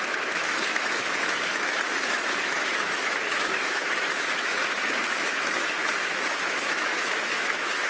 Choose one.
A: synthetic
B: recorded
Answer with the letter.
A